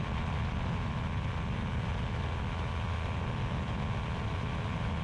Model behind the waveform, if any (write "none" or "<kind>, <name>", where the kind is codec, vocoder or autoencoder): none